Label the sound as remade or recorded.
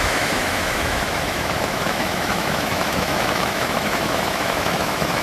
remade